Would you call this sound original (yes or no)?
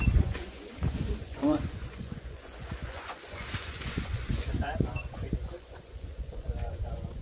no